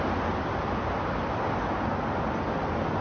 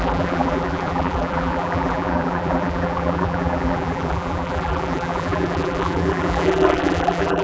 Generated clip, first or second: second